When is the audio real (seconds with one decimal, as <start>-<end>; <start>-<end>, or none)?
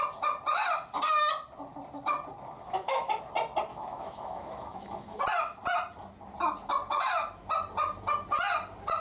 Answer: 0.0-2.6; 3.2-3.7; 5.2-9.0